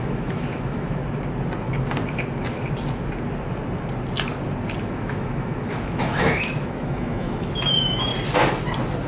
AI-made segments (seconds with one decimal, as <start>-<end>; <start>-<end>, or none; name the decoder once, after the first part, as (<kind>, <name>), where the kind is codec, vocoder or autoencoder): 0.0-1.0 (autoencoder, DAC-VAE); 4.8-8.1